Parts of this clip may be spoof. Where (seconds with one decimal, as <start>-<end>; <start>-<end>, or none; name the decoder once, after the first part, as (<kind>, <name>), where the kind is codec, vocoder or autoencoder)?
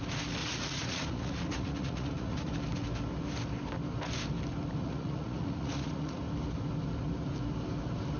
0.4-2.5 (vocoder, Vocos); 4.8-6.2